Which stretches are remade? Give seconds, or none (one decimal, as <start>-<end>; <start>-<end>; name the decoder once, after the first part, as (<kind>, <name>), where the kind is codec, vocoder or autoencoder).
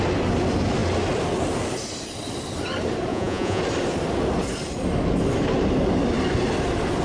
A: 3.1-3.6 (vocoder, Vocos)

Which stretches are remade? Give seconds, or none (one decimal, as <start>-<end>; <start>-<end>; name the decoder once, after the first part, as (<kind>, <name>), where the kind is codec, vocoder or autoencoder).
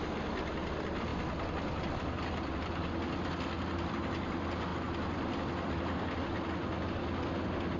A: none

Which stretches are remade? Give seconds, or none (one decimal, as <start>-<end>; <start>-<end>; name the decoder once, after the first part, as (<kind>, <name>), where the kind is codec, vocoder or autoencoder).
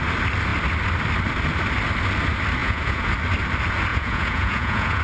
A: 2.6-3.1 (vocoder, Vocos); 3.9-5.0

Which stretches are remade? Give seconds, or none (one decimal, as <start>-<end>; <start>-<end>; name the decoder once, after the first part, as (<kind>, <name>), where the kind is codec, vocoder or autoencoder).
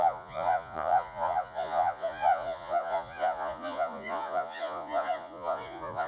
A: 0.0-6.1 (vocoder, Vocos)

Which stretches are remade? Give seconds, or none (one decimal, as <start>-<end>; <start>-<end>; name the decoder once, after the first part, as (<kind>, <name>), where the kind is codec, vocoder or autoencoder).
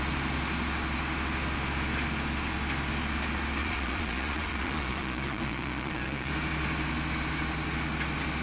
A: 3.6-6.3 (vocoder, Vocos)